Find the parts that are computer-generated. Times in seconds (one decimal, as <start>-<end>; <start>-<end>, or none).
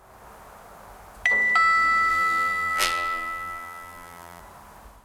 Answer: 2.1-4.4